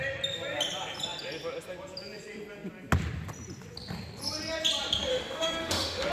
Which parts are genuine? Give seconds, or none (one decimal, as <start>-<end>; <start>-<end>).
0.0-5.1